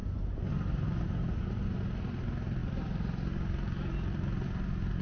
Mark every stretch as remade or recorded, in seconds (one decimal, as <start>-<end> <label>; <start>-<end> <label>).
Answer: 0.0-5.0 recorded